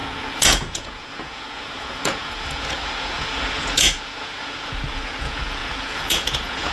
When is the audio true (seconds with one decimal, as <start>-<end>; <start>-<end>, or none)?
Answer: none